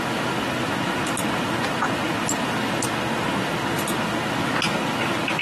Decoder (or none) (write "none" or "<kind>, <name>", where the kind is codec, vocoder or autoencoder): none